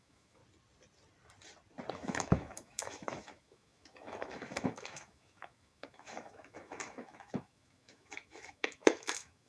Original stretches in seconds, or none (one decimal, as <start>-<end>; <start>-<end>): 0.4-1.9